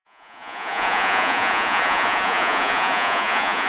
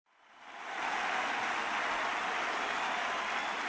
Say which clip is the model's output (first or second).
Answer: first